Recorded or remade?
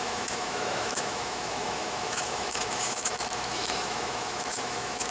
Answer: remade